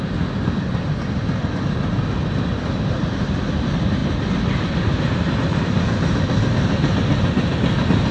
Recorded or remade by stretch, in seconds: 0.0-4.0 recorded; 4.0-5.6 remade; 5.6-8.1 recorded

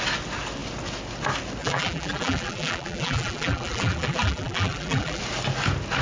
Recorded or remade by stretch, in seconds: 0.0-1.6 recorded; 1.6-5.2 remade; 5.2-6.0 recorded